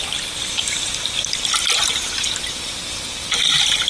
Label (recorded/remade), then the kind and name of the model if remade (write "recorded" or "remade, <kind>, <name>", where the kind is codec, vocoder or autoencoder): recorded